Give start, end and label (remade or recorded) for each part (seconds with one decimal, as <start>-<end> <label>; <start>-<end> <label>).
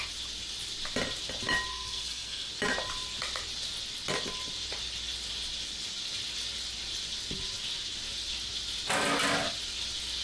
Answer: 0.0-1.7 recorded; 1.7-2.5 remade; 2.5-10.2 recorded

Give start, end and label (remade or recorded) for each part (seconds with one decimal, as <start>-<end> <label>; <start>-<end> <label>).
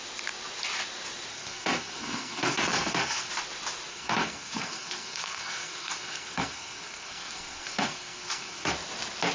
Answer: 0.0-1.3 recorded; 1.3-3.3 remade; 3.3-3.9 recorded; 3.9-8.7 remade; 8.7-9.3 recorded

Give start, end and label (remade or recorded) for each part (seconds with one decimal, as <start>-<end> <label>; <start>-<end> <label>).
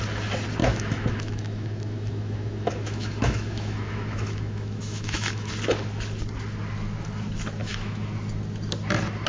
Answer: 0.0-0.6 recorded; 0.6-5.5 remade; 5.5-7.6 recorded; 7.6-8.1 remade; 8.1-9.3 recorded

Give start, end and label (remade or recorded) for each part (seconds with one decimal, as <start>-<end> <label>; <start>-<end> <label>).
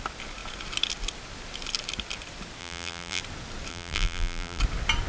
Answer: 0.0-2.6 recorded; 2.6-3.2 remade; 3.2-3.7 recorded; 3.7-4.6 remade; 4.6-5.1 recorded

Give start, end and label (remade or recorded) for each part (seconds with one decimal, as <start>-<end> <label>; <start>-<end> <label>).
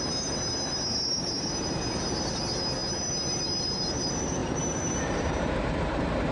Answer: 0.0-0.9 recorded; 0.9-1.8 remade; 1.8-2.8 recorded; 2.8-3.8 remade; 3.8-4.4 recorded; 4.4-6.3 remade